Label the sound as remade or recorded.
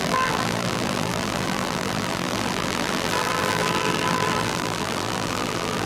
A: remade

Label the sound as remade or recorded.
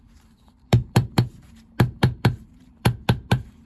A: remade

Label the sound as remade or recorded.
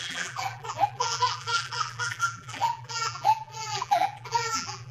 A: remade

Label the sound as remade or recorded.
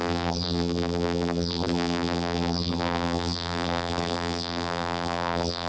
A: remade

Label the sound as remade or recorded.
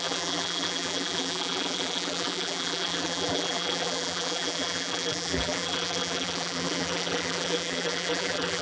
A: remade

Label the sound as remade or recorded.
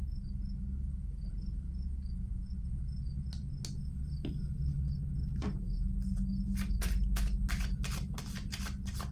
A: recorded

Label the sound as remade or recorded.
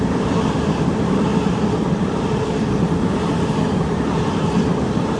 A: remade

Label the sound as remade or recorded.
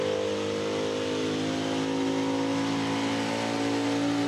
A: recorded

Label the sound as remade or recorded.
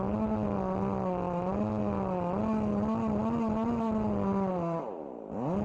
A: recorded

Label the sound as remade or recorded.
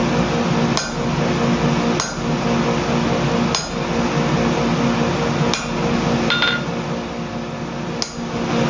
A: recorded